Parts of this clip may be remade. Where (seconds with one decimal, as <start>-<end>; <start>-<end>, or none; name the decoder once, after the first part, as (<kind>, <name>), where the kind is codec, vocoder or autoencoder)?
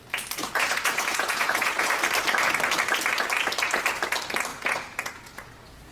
0.4-1.9 (vocoder, Vocos); 4.5-5.5